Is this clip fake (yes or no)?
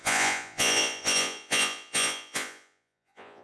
yes